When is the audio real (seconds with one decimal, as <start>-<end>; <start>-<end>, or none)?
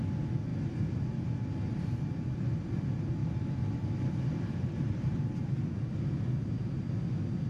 0.0-3.2; 5.2-7.5